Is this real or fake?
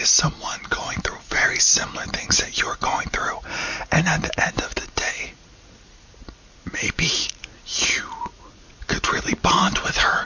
fake